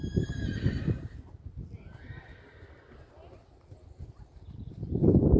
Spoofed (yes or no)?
no